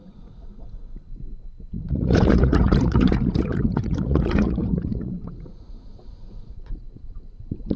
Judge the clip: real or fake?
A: fake